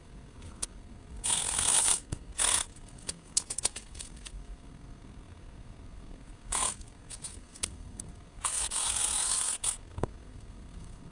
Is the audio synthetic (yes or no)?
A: yes